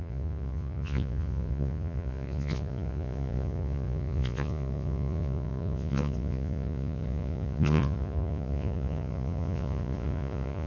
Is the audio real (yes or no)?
no